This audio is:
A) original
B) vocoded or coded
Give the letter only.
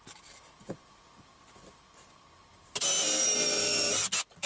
A